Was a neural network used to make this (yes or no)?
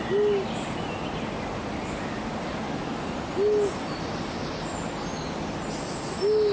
no